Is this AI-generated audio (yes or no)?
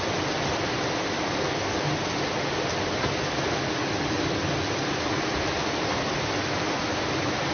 no